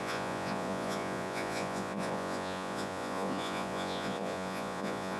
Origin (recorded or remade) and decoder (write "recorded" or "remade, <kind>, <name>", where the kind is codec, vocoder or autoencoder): remade, vocoder, Vocos